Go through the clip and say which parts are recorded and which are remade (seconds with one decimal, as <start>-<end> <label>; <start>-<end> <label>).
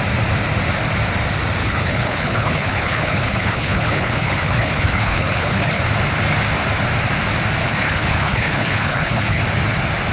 0.0-1.6 recorded; 1.6-5.8 remade; 5.8-7.6 recorded; 7.6-9.4 remade; 9.4-10.1 recorded